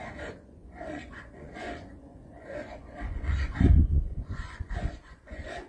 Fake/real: fake